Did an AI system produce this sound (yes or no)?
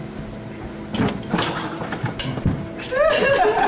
no